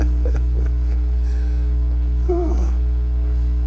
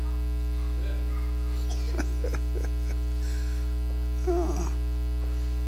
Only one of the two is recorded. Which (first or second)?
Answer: second